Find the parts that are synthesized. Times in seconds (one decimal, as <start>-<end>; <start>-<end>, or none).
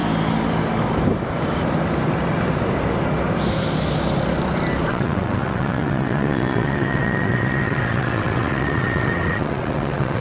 4.9-10.2